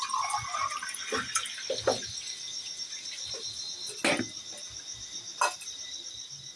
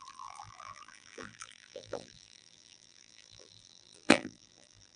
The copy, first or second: second